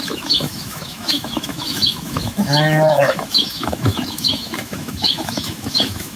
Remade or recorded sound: remade